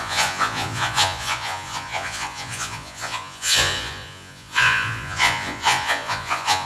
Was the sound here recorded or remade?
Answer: remade